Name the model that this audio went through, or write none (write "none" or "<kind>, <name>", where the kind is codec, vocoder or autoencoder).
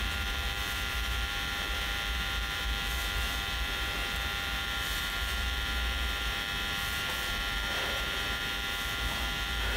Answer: vocoder, BigVGAN v2